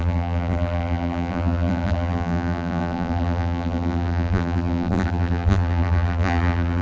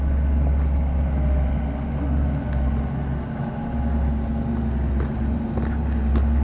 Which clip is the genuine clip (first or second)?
second